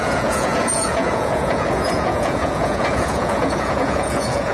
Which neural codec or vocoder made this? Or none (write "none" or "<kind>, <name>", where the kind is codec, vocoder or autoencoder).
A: vocoder, Vocos